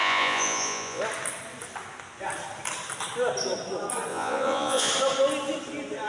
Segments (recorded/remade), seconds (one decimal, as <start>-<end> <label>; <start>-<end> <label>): 0.0-1.0 remade; 1.0-4.1 recorded; 4.1-4.9 remade; 4.9-6.1 recorded